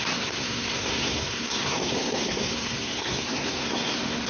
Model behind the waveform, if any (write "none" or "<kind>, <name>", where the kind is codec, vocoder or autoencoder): codec, SNAC